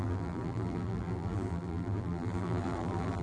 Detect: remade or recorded remade